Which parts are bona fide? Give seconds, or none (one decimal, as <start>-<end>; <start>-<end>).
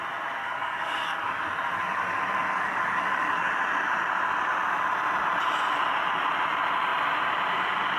0.0-0.4; 1.4-1.8; 3.5-8.0